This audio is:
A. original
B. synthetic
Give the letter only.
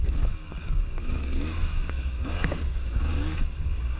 B